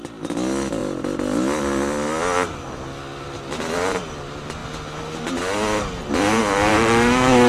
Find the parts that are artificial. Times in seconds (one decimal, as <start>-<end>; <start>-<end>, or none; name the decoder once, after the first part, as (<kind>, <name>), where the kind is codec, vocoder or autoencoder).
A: 6.7-7.5 (autoencoder, DAC-VAE)